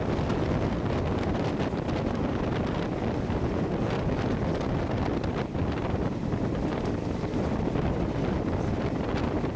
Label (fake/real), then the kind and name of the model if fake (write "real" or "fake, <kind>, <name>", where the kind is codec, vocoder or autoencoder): real